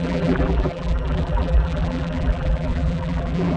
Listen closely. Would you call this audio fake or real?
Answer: fake